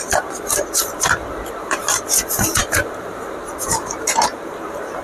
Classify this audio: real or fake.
fake